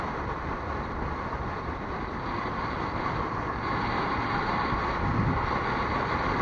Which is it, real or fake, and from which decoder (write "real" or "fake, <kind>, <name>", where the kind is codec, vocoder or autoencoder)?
real